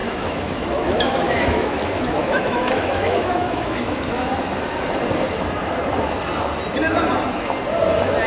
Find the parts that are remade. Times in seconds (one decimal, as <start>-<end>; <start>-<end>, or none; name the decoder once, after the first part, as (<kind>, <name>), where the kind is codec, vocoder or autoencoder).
0.0-4.3 (autoencoder, DAC-VAE)